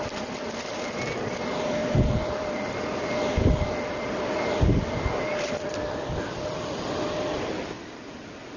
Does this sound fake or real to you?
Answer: real